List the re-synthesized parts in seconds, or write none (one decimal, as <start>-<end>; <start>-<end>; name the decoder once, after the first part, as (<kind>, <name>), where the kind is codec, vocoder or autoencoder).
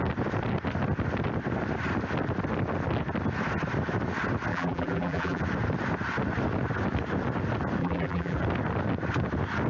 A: 4.5-5.4 (vocoder, BigVGAN v2); 7.8-8.4